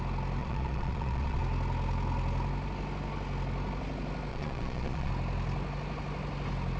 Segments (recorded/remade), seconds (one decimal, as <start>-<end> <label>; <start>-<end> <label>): 0.0-0.4 recorded; 0.4-1.4 remade; 1.4-4.3 recorded; 4.3-5.1 remade; 5.1-6.8 recorded